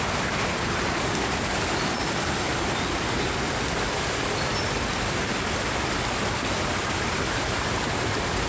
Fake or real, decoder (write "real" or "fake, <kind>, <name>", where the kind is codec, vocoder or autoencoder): real